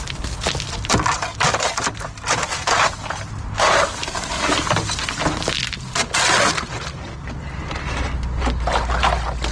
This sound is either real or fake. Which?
real